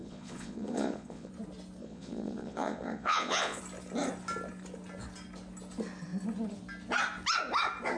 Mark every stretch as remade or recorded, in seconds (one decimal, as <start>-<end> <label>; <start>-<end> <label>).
0.0-1.3 remade; 1.3-1.8 recorded; 1.8-3.6 remade; 3.6-8.0 recorded